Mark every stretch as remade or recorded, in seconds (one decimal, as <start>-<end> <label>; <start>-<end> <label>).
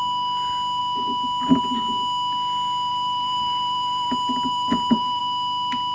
0.0-2.9 recorded; 2.9-5.2 remade; 5.2-5.9 recorded